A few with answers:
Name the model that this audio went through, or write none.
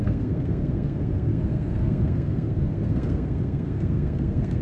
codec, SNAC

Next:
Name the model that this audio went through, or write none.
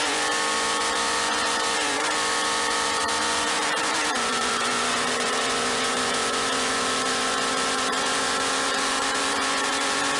vocoder, Vocos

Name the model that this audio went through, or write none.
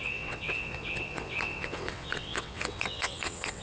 vocoder, WaveNeXt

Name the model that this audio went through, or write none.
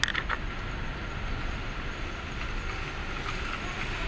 none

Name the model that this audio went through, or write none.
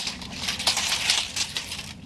none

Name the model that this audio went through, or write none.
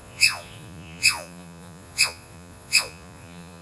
vocoder, Vocos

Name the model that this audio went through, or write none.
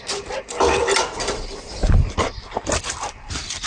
none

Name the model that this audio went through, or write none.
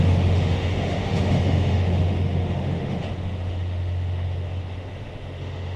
autoencoder, DAC-VAE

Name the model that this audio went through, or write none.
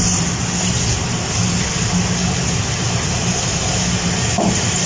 none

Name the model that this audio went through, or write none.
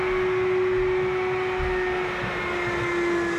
none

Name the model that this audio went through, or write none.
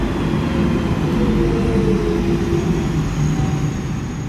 none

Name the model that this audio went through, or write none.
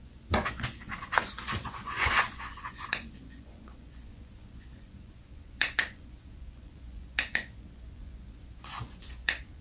vocoder, Vocos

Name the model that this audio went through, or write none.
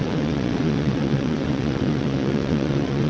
vocoder, WaveNeXt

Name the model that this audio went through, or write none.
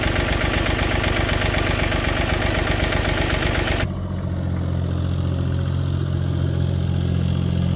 none